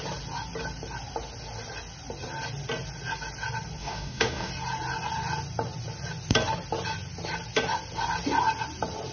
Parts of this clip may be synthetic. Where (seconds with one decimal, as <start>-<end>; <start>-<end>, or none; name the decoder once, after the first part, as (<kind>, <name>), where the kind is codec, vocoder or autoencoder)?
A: 3.8-4.5 (codec, DAC)